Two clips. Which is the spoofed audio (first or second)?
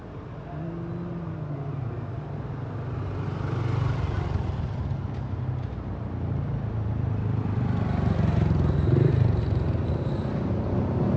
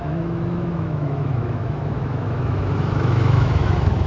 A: second